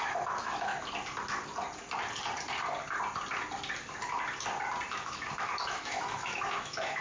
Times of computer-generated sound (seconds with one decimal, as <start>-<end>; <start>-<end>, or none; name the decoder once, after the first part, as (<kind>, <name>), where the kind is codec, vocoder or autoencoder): 0.0-0.7 (autoencoder, DAC-VAE); 4.9-7.0